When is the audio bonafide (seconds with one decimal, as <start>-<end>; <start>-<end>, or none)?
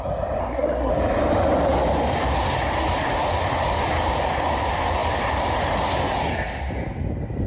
0.0-0.4; 0.9-7.5